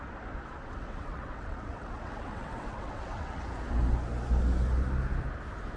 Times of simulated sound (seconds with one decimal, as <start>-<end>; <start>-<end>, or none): 0.6-3.5